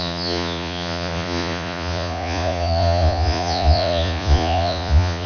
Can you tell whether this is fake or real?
fake